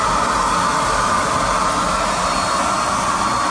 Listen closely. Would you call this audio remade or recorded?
recorded